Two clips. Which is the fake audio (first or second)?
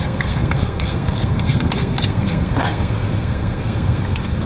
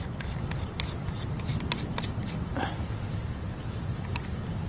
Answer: first